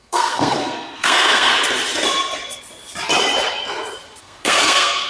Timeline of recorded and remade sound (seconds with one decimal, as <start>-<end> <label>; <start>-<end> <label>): 0.0-1.5 remade; 1.5-4.2 recorded; 4.2-5.1 remade